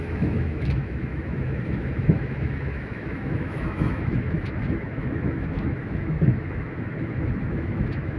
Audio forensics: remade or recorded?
remade